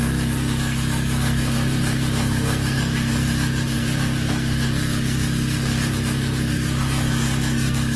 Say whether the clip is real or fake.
fake